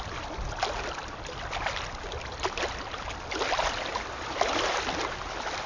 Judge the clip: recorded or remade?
recorded